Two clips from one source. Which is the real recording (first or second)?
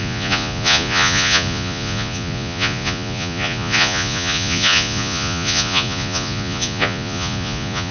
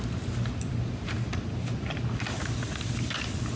second